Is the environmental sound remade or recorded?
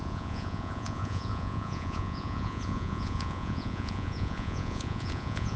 remade